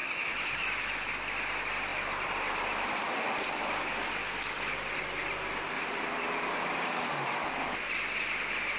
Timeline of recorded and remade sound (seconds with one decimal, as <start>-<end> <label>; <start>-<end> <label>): 0.0-1.1 remade; 1.1-8.8 recorded